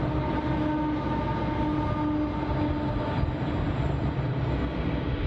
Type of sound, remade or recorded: recorded